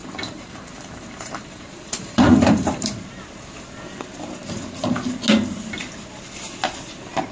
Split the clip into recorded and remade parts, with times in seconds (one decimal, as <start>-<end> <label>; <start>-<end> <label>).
0.0-2.9 remade; 2.9-7.3 recorded